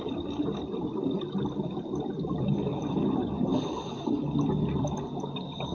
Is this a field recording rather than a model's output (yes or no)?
yes